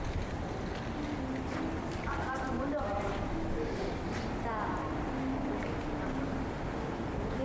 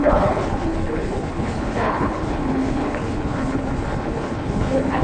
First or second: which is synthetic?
second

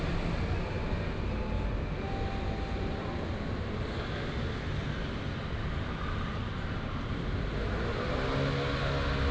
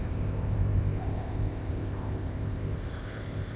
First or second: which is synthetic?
second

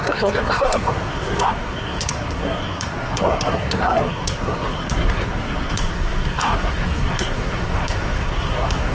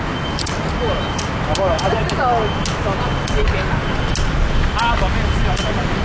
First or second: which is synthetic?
first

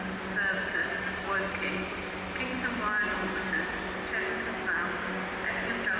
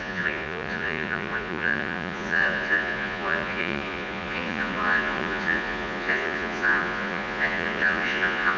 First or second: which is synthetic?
second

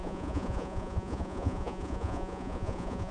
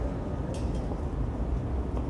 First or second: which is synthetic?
first